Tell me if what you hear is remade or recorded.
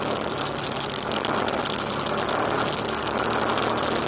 recorded